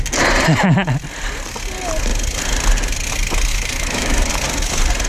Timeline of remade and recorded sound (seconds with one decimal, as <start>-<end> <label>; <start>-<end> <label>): 0.0-3.5 recorded; 3.5-4.3 remade; 4.3-5.1 recorded